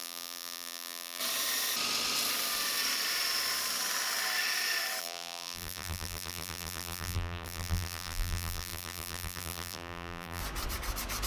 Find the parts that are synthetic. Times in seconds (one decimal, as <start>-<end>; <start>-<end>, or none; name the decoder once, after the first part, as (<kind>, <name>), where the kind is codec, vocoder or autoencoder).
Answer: 0.0-1.2 (vocoder, BigVGAN v2); 5.0-10.4